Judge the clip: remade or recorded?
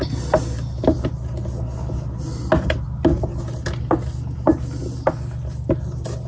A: recorded